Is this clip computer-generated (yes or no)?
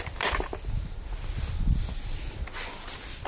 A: no